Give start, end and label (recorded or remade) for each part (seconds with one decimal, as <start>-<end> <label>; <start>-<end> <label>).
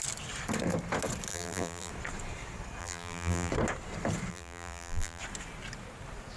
0.0-1.3 recorded; 1.3-1.9 remade; 1.9-2.8 recorded; 2.8-3.5 remade; 3.5-4.3 recorded; 4.3-5.2 remade; 5.2-6.4 recorded